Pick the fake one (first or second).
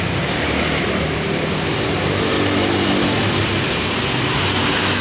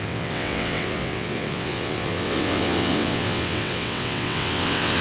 second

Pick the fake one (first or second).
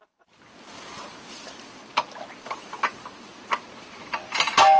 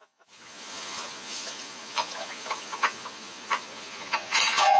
second